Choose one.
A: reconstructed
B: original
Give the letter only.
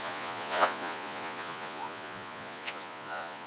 A